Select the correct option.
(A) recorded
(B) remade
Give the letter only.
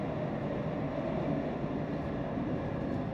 A